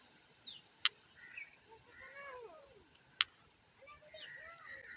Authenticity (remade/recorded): recorded